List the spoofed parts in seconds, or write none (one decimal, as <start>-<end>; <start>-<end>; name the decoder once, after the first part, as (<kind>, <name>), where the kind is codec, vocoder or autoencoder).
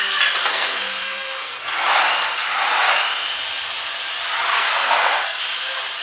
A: 0.4-2.0 (codec, SNAC); 4.5-5.4